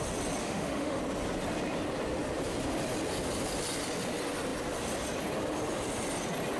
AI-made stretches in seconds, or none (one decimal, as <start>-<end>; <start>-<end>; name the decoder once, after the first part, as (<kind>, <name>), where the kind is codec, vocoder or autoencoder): 0.4-1.0 (autoencoder, DAC-VAE)

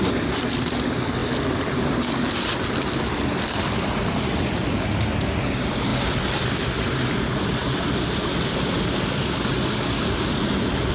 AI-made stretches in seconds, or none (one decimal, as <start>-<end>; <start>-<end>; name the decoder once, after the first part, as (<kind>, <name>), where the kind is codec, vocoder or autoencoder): none

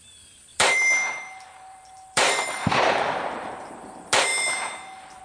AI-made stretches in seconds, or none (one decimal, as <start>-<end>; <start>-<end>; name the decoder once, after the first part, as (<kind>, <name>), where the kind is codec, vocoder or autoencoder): 0.5-3.2 (vocoder, BigVGAN v2); 4.3-5.2